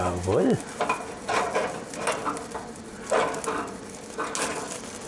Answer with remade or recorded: recorded